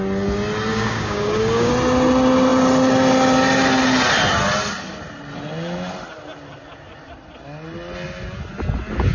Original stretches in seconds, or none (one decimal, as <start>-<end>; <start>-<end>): 0.0-0.7; 1.7-9.1

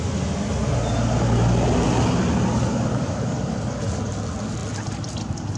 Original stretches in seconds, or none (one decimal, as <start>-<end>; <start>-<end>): 0.0-2.7; 3.4-5.6

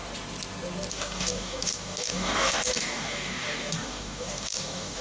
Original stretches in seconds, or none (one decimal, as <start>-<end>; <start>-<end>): 0.0-0.9

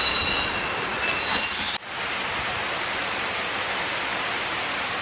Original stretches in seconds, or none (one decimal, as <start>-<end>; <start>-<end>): 0.0-5.0

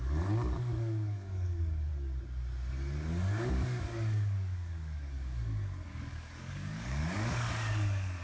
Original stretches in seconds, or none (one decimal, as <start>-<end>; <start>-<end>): 1.9-3.1

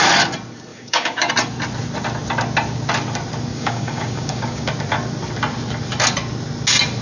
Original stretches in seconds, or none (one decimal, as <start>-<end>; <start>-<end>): 0.0-0.7; 1.3-3.5; 4.7-7.0